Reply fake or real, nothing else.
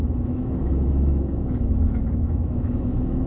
fake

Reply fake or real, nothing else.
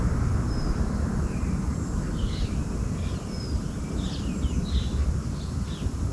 real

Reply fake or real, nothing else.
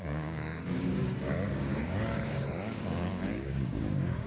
fake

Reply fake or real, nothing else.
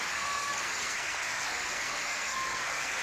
fake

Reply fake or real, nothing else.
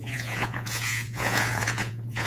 fake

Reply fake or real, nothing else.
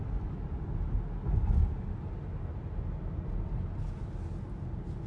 real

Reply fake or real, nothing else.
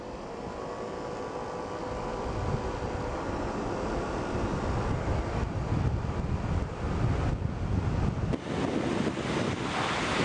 real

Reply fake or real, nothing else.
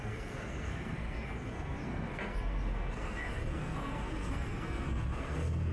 fake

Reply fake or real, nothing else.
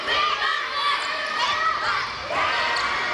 real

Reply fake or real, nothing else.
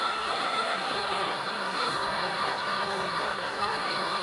fake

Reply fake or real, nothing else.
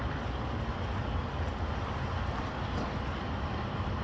fake